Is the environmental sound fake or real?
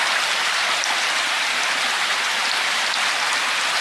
real